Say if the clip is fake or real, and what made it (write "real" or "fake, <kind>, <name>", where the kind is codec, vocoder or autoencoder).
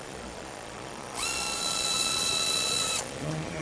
fake, vocoder, Vocos